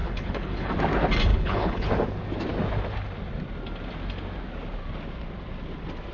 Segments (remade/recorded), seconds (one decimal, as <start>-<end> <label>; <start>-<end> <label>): 0.0-0.7 remade; 0.7-1.3 recorded; 1.3-1.9 remade; 1.9-6.1 recorded